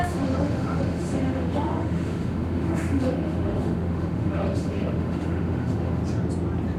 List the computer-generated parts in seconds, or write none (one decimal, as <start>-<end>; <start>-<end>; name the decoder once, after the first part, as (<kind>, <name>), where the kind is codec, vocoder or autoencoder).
0.0-6.0 (autoencoder, DAC-VAE)